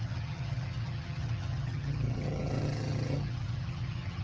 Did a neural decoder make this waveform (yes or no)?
yes